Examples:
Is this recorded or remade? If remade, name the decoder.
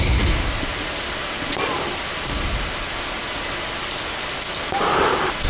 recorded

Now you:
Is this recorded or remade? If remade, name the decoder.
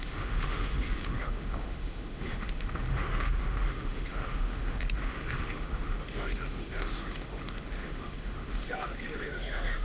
remade, autoencoder, DAC-VAE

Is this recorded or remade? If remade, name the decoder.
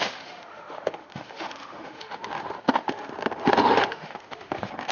remade, autoencoder, DAC-VAE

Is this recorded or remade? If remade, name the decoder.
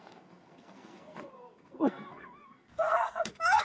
remade, codec, SNAC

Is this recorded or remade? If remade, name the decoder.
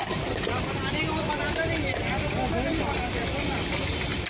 recorded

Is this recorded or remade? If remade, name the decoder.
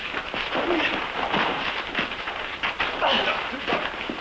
remade, vocoder, BigVGAN v2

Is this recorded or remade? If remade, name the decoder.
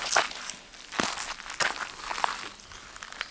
recorded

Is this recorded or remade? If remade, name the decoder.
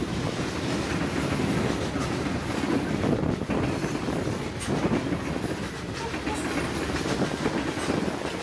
recorded